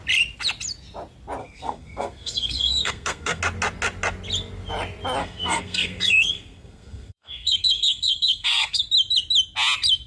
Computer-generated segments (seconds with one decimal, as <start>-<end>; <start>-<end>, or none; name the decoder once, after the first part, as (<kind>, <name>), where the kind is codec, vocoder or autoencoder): 1.4-3.4 (codec, SNAC); 5.2-8.8